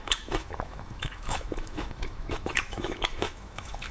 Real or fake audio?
fake